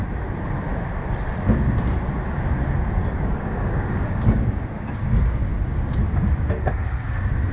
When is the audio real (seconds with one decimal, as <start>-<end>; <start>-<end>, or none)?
0.0-3.0; 4.7-7.5